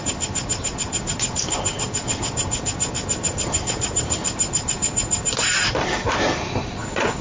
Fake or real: fake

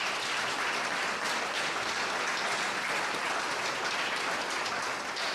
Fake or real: fake